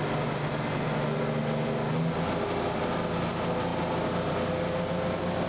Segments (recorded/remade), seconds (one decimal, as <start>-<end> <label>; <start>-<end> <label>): 0.0-5.5 recorded